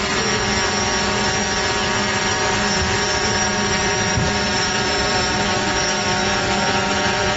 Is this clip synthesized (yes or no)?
no